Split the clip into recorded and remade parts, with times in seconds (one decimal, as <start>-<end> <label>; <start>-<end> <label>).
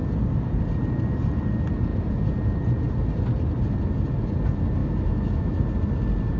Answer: 0.0-4.8 recorded; 4.8-5.6 remade; 5.6-6.4 recorded